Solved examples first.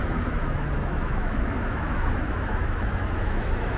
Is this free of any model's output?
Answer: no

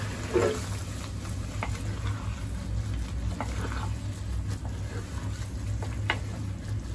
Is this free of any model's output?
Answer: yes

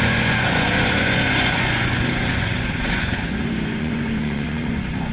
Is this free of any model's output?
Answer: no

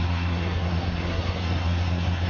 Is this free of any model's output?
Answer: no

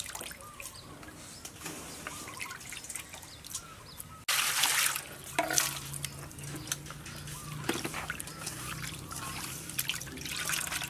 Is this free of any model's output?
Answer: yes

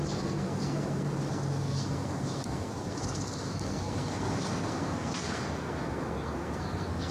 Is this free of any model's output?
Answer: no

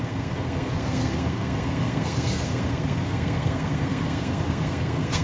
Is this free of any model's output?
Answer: no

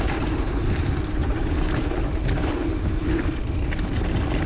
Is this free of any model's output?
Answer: yes